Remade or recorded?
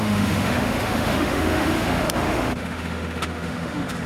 remade